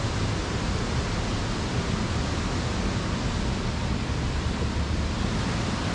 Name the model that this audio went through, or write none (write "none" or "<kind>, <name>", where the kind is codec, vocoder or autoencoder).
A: none